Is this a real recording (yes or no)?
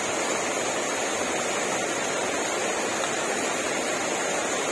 yes